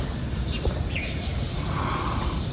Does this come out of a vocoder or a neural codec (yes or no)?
no